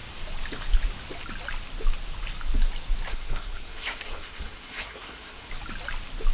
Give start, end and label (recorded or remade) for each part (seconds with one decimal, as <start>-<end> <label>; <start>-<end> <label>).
0.0-3.1 recorded; 3.1-5.5 remade; 5.5-6.3 recorded